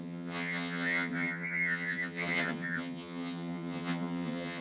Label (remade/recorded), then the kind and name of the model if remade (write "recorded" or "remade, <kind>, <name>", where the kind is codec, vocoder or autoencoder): remade, vocoder, HiFi-GAN